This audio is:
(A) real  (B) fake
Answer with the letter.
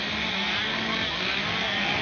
A